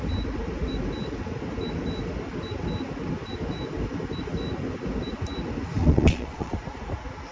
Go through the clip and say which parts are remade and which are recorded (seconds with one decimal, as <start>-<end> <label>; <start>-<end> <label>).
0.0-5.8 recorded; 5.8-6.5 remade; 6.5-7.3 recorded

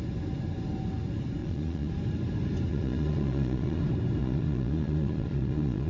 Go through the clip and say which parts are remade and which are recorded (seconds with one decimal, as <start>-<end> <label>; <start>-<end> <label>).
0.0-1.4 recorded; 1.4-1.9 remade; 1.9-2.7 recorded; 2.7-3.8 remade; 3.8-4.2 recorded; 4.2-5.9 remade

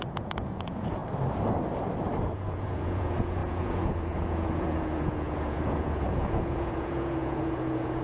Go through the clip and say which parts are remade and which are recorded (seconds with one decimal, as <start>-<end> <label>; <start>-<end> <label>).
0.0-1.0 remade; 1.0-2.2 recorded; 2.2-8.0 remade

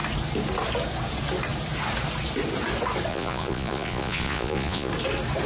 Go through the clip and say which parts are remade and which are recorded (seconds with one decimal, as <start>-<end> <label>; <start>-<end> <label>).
0.0-3.1 recorded; 3.1-4.9 remade; 4.9-5.5 recorded

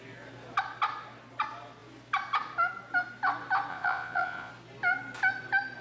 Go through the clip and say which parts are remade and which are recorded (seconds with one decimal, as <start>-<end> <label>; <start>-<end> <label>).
0.0-3.7 recorded; 3.7-4.5 remade; 4.5-5.8 recorded

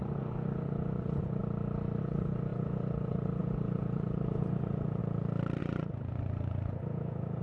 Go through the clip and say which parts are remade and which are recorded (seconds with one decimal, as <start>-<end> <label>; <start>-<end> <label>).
0.0-1.4 remade; 1.4-2.0 recorded; 2.0-5.0 remade; 5.0-5.6 recorded; 5.6-7.4 remade

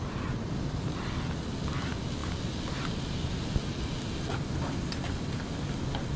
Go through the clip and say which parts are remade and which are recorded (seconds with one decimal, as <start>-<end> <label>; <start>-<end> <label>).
0.0-6.2 recorded

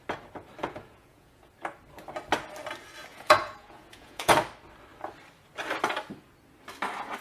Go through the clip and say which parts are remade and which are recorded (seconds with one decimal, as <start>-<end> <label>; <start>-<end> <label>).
0.0-0.6 recorded; 0.6-1.5 remade; 1.5-3.1 recorded; 3.1-4.3 remade; 4.3-7.2 recorded